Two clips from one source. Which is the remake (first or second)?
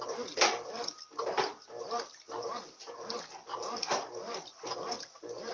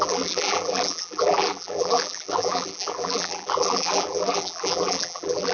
second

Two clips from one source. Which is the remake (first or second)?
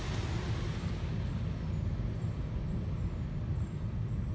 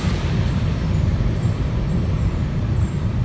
second